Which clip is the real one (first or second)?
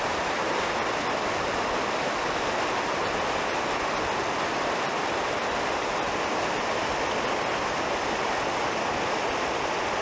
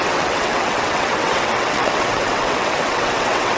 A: first